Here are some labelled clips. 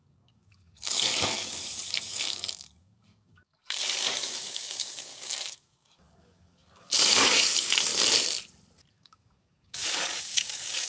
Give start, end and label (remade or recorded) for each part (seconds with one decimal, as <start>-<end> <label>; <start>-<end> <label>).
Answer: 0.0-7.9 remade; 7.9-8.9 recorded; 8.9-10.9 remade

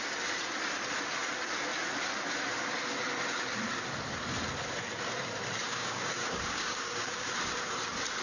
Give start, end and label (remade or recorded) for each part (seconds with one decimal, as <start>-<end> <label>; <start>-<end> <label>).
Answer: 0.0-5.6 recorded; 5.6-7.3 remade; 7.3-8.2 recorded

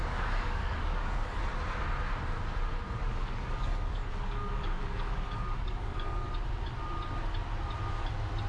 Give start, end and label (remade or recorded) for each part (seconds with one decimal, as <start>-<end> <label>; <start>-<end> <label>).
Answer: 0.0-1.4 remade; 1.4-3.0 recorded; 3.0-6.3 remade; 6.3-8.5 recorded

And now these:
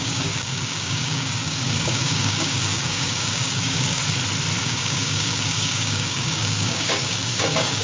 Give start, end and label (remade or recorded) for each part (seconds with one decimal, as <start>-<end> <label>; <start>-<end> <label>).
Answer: 0.0-4.0 remade; 4.0-4.6 recorded; 4.6-7.8 remade